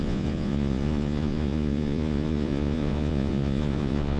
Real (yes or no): no